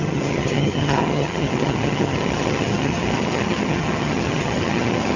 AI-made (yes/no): yes